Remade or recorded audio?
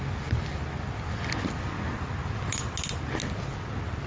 recorded